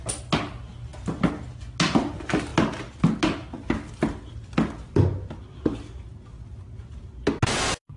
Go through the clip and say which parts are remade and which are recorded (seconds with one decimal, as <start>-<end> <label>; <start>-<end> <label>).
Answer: 0.0-8.0 recorded